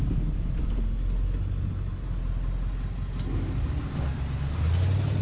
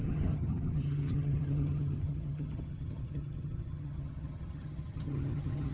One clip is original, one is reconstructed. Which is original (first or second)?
first